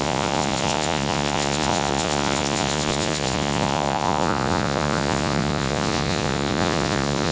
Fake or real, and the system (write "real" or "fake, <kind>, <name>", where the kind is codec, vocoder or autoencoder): fake, vocoder, Vocos